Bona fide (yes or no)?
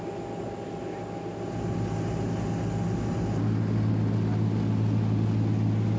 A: yes